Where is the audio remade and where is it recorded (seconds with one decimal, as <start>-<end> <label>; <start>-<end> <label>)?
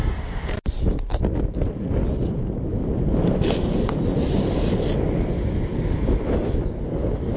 0.0-7.4 recorded